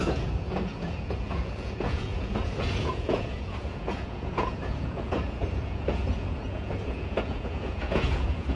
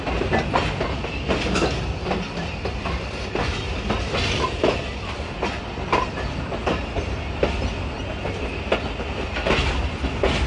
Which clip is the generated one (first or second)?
first